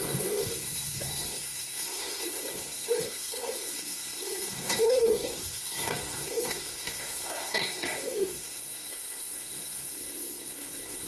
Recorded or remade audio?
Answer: remade